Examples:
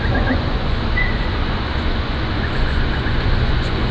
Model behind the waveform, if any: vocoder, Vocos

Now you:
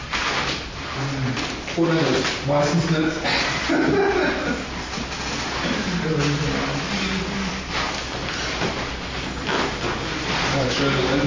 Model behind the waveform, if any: none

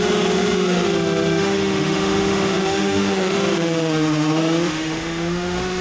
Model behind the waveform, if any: autoencoder, DAC-VAE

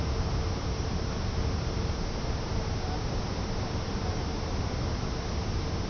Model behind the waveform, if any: none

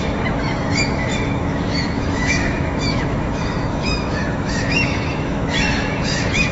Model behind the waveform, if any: autoencoder, DAC-VAE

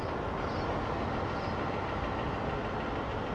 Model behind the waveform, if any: none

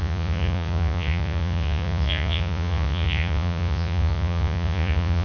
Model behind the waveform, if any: vocoder, Vocos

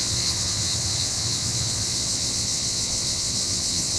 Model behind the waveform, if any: vocoder, Vocos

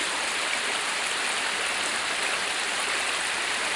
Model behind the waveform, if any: none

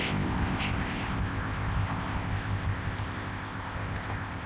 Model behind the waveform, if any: codec, ZipCodec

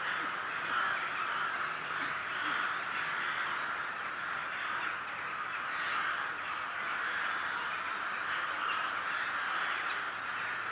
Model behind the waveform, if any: none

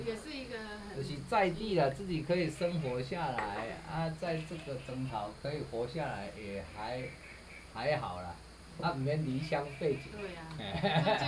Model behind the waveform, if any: none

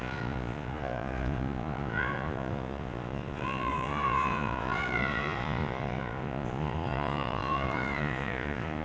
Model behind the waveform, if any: vocoder, Vocos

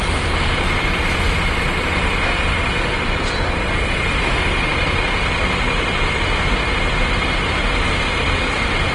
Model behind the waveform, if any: none